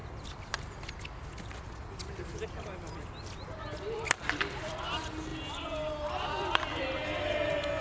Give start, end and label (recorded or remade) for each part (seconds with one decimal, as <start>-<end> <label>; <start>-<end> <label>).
0.0-7.8 recorded

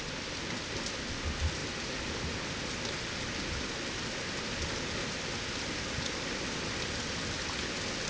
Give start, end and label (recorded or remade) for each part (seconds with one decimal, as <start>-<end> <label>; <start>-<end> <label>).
0.0-8.1 recorded

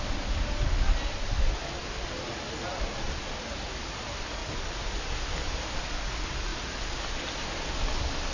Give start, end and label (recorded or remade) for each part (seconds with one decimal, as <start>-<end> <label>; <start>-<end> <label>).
0.0-1.8 recorded; 1.8-2.3 remade; 2.3-4.4 recorded; 4.4-5.5 remade; 5.5-8.3 recorded